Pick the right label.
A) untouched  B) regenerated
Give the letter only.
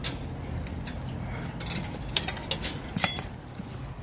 A